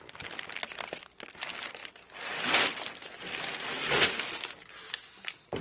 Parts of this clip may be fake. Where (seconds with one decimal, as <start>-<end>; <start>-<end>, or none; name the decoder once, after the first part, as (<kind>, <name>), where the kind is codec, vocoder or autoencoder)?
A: none